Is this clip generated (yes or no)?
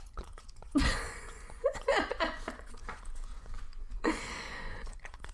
yes